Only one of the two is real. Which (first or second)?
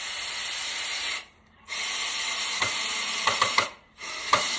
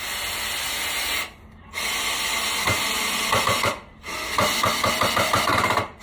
second